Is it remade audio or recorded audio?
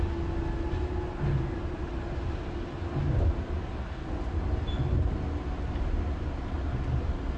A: recorded